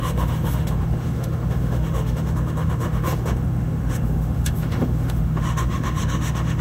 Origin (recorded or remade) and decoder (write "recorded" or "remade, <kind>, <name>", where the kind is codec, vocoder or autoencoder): remade, autoencoder, DAC-VAE